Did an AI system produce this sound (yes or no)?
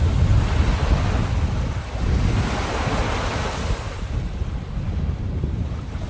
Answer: no